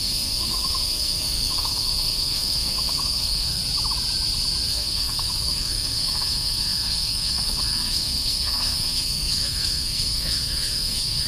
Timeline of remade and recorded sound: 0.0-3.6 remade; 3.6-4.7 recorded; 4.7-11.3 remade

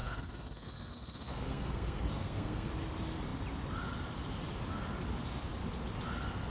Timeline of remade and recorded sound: 0.0-2.7 remade; 2.7-6.5 recorded

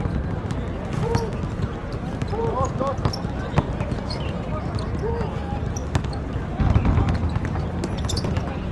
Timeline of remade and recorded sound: 0.0-8.7 recorded

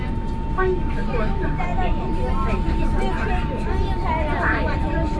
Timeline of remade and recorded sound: 0.0-5.2 recorded

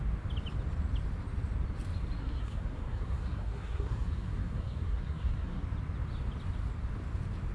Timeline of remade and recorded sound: 0.0-2.2 recorded; 2.2-5.6 remade; 5.6-7.5 recorded

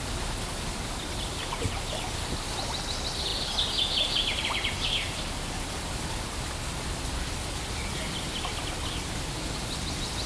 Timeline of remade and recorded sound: 0.0-10.3 recorded